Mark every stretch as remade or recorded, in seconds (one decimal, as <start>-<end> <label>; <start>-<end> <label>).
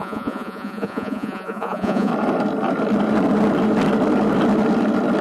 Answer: 0.0-2.1 remade; 2.1-5.2 recorded